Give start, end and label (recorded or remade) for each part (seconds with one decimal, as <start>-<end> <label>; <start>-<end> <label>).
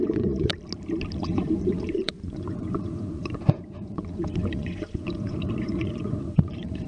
0.0-0.5 remade; 0.5-1.2 recorded; 1.2-6.9 remade